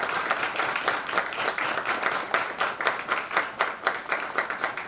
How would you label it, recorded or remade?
recorded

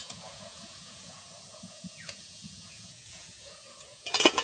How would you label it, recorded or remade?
remade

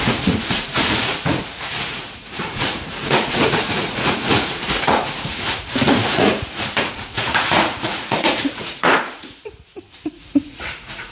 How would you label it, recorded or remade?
remade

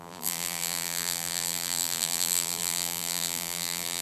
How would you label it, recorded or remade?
remade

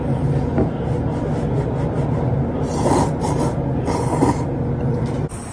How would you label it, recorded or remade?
recorded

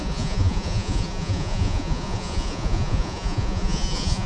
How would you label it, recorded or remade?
remade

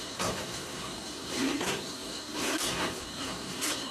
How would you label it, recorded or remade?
remade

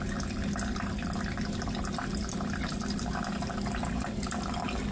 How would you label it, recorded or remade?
recorded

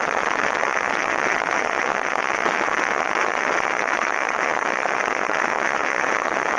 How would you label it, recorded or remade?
remade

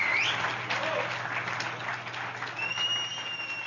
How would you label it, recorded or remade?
recorded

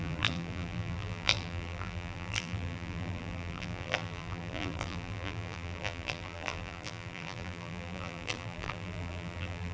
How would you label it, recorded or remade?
remade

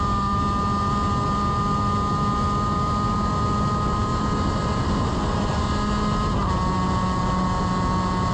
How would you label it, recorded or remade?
recorded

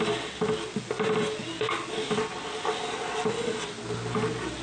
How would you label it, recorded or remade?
recorded